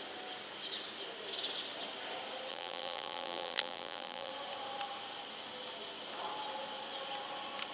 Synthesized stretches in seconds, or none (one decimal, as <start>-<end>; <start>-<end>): 2.5-4.3